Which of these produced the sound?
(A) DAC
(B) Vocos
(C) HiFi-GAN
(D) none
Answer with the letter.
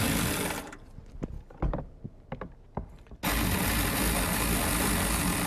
D